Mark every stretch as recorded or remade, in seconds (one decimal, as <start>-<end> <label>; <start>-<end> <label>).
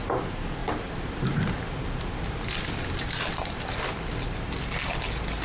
0.0-0.6 recorded; 0.6-3.8 remade; 3.8-5.4 recorded